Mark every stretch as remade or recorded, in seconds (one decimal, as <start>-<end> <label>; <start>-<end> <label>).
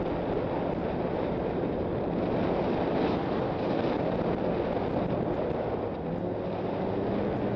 0.0-0.8 recorded; 0.8-1.9 remade; 1.9-7.6 recorded